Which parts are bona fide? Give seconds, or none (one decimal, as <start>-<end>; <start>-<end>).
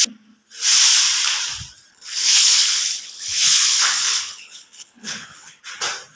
0.0-1.9; 5.6-6.2